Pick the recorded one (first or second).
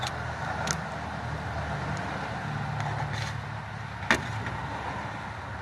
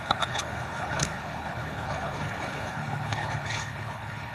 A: first